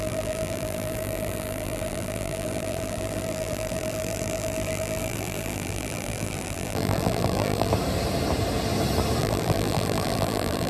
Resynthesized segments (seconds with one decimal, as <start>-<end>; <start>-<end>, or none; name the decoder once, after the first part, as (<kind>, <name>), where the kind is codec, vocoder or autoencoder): 0.0-7.7 (vocoder, BigVGAN v2); 9.2-10.7